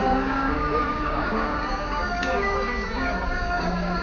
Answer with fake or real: fake